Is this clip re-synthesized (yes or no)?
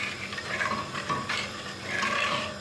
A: yes